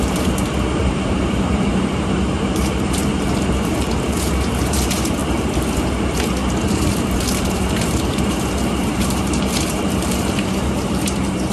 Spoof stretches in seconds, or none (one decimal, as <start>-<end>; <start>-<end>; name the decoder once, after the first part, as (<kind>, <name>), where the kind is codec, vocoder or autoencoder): 0.0-5.2 (vocoder, BigVGAN v2); 7.4-11.5